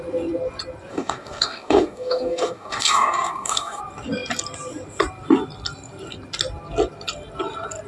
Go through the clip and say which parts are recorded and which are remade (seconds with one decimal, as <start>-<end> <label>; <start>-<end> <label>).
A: 0.0-0.9 recorded; 0.9-3.8 remade; 3.8-7.9 recorded